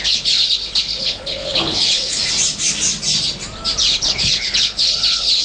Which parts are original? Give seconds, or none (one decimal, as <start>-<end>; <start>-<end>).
2.2-3.8